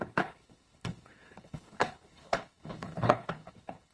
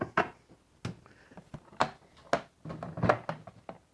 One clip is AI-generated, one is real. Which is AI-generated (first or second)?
first